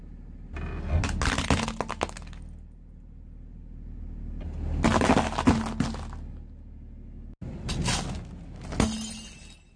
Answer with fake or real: real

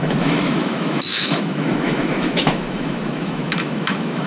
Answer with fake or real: fake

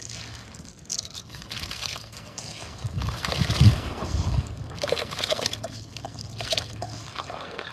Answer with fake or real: fake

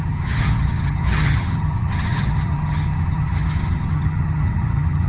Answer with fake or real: fake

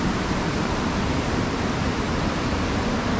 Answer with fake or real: fake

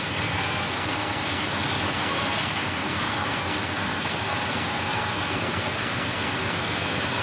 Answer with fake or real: fake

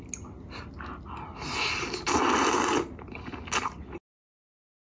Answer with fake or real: real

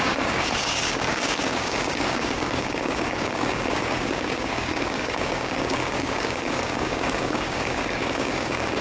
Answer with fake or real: fake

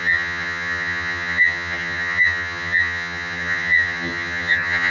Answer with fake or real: fake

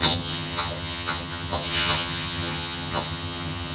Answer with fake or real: fake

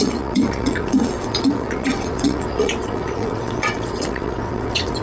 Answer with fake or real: fake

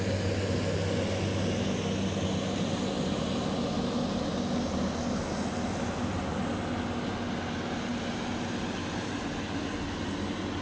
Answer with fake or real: real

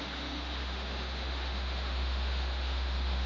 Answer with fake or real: fake